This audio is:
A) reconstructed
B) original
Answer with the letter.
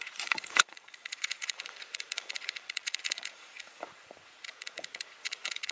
A